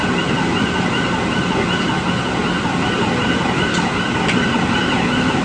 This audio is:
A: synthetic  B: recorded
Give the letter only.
B